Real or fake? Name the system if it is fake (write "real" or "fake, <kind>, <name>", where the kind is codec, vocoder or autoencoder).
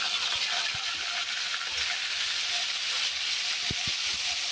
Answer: real